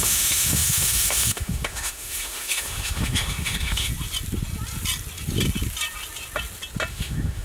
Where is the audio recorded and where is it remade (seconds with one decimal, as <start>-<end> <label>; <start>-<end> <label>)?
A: 0.0-3.9 remade; 3.9-6.9 recorded; 6.9-7.4 remade